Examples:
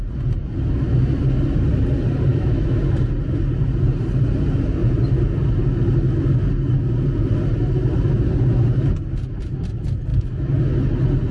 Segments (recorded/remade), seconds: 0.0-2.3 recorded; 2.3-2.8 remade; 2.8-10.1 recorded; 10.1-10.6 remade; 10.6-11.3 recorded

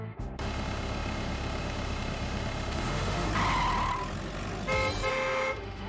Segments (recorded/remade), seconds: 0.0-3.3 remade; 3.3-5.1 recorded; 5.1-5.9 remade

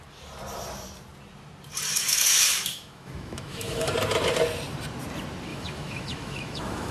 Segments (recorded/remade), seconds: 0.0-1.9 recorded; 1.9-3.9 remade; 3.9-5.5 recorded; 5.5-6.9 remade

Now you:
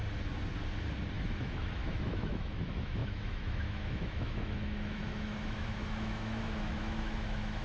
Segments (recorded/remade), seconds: 0.0-1.1 recorded; 1.1-7.6 remade

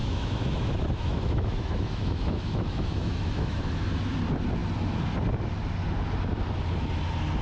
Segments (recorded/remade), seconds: 0.0-3.6 remade; 3.6-7.4 recorded